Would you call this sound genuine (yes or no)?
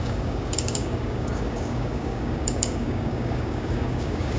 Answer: no